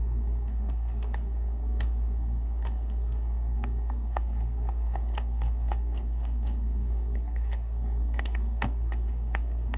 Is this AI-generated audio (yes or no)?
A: yes